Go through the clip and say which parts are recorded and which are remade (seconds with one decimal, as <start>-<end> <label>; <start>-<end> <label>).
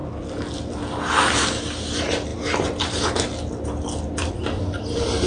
0.0-5.3 recorded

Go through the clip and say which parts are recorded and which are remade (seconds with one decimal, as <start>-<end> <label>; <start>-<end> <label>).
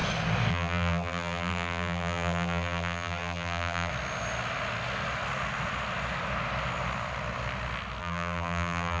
0.0-0.5 recorded; 0.5-3.9 remade; 3.9-8.0 recorded; 8.0-9.0 remade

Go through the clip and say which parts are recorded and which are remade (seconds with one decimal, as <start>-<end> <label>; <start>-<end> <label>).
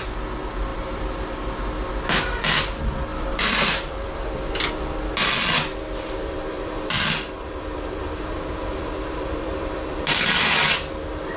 0.0-3.1 recorded; 3.1-4.7 remade; 4.7-5.2 recorded; 5.2-10.4 remade; 10.4-11.4 recorded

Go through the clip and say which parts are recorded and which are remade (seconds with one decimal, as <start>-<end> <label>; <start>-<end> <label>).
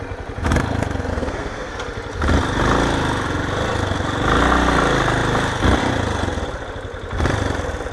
0.0-1.1 recorded; 1.1-1.8 remade; 1.8-7.9 recorded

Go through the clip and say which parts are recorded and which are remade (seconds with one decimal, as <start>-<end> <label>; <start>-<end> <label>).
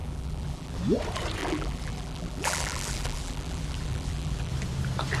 0.0-0.8 remade; 0.8-1.4 recorded; 1.4-4.5 remade; 4.5-5.2 recorded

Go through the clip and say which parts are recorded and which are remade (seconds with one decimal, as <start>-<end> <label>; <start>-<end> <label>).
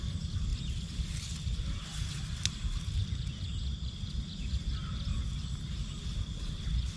0.0-7.0 recorded